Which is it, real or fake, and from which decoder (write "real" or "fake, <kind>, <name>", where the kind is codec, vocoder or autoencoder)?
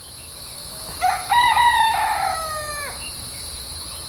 fake, autoencoder, DAC-VAE